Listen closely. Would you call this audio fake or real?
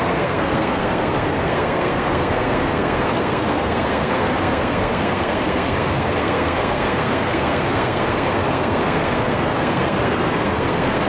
fake